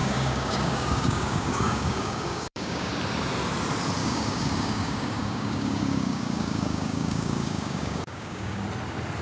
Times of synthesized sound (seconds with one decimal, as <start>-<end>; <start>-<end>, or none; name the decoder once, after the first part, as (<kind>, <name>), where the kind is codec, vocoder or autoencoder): 0.0-2.9 (codec, DAC); 4.0-8.6